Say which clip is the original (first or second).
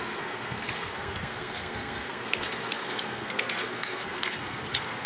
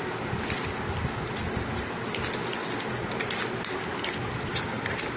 second